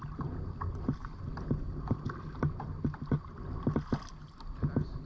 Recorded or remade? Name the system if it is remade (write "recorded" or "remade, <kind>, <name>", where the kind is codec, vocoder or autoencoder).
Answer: recorded